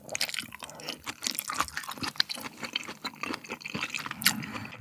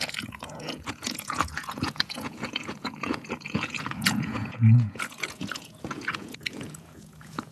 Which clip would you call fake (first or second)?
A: second